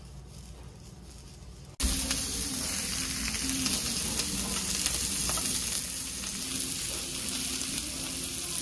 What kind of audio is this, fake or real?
real